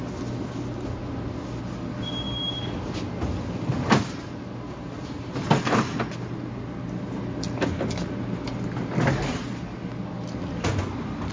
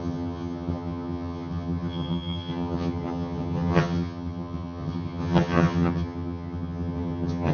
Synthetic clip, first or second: second